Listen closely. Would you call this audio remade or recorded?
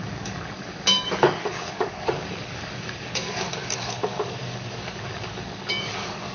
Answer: remade